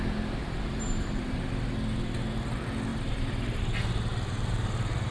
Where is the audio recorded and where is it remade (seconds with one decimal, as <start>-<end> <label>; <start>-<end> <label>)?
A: 0.0-0.4 recorded; 0.4-1.5 remade; 1.5-2.9 recorded; 2.9-3.6 remade; 3.6-4.1 recorded; 4.1-5.1 remade